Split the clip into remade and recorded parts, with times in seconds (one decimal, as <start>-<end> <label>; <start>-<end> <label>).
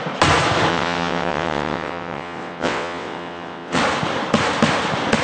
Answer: 0.0-0.7 recorded; 0.7-3.8 remade; 3.8-5.2 recorded